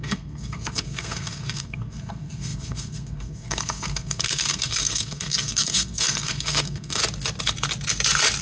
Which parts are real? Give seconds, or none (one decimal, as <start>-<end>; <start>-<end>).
7.0-8.4